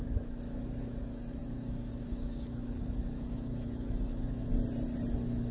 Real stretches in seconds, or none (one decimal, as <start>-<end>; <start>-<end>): 4.5-5.1